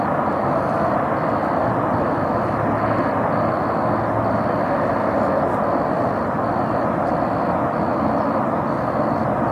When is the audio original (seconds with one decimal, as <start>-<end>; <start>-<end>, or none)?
0.0-9.5